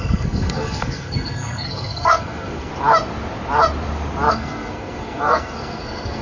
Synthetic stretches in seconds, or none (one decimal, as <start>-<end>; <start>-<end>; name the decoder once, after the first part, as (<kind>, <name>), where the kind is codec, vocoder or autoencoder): 0.0-2.7 (codec, SNAC); 4.3-6.2